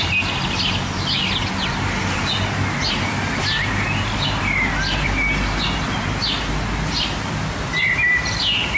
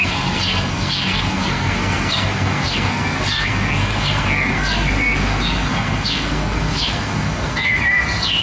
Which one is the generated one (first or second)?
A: second